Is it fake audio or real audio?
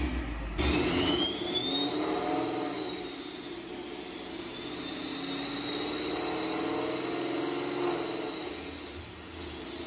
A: real